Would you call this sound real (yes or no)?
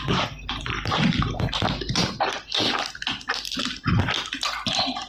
yes